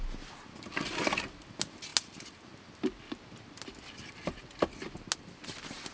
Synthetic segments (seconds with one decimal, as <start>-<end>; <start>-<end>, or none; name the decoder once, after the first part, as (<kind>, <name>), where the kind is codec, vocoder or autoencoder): none